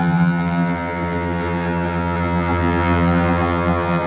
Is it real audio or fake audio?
fake